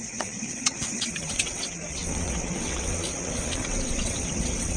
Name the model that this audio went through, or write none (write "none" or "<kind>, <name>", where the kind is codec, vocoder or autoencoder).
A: vocoder, WaveNeXt